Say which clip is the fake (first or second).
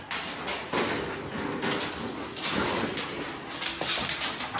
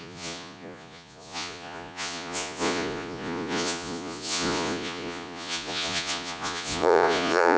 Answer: second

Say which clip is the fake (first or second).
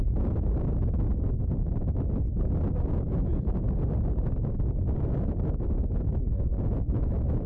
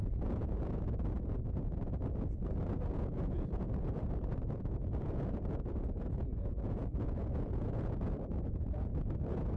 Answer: second